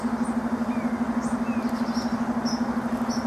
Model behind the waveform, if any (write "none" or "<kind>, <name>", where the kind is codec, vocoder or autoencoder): none